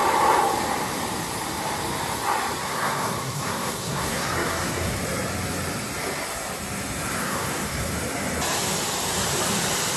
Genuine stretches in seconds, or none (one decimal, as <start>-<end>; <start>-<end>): 0.0-2.6; 5.0-7.2; 7.9-10.0

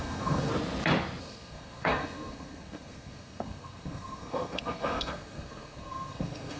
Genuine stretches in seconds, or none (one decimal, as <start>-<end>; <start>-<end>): 0.5-1.2

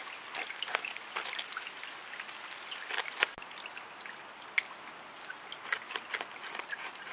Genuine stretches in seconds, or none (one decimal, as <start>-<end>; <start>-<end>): 0.0-7.1

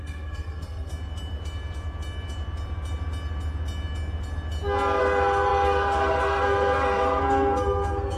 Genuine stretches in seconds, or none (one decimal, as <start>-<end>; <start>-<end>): 0.9-5.0

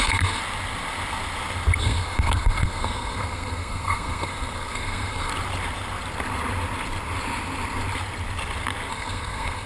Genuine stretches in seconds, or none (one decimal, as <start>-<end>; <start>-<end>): 0.4-1.8; 5.3-8.9